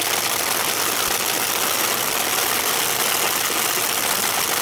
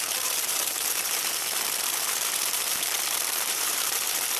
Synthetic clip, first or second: second